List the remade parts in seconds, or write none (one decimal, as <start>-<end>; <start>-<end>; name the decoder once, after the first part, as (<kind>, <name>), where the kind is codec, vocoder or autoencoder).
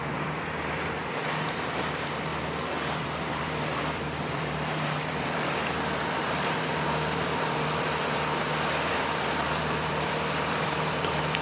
0.0-2.3 (vocoder, BigVGAN v2); 3.0-11.4